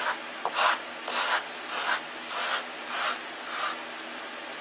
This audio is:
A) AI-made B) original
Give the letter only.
B